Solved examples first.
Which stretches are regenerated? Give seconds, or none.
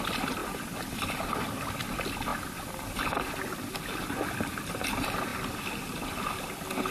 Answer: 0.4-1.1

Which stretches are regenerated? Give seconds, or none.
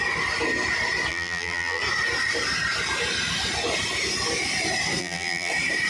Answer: 1.1-1.8; 5.0-5.5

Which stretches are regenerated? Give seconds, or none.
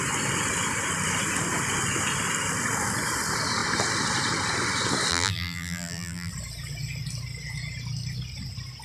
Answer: 5.1-6.3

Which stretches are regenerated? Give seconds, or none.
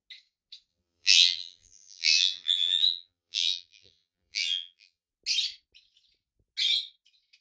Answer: 0.7-5.1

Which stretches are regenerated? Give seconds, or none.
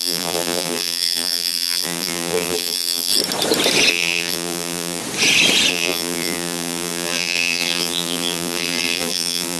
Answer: 0.0-3.1; 3.9-5.0; 5.7-9.6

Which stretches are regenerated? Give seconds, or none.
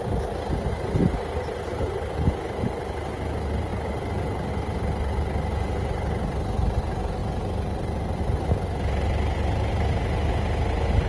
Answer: 7.2-8.2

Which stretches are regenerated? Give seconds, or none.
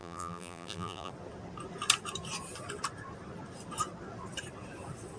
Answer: 0.0-1.1